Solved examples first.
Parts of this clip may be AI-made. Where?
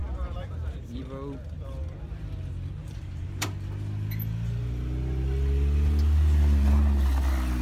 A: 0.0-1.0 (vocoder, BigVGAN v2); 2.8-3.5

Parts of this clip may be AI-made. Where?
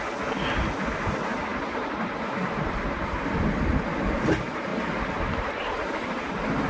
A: 1.5-4.1 (vocoder, BigVGAN v2); 4.7-6.3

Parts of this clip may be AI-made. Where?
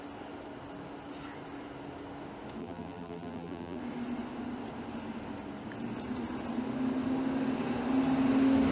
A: 2.6-3.8 (vocoder, BigVGAN v2)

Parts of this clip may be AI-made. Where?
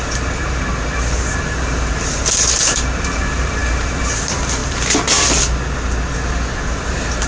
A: 0.0-4.6 (vocoder, BigVGAN v2); 6.7-7.3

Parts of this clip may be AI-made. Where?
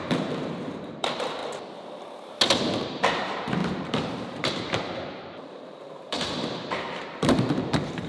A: 0.0-1.4 (vocoder, BigVGAN v2); 2.8-8.1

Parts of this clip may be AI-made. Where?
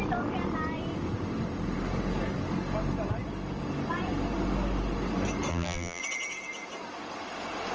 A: 5.5-6.0 (vocoder, BigVGAN v2)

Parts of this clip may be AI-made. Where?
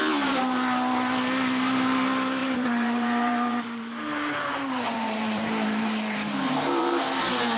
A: 2.4-7.0 (vocoder, BigVGAN v2)